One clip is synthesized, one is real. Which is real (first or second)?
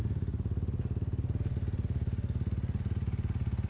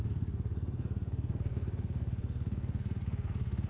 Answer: first